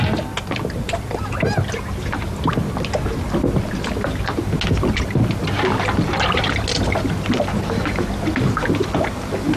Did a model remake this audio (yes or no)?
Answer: no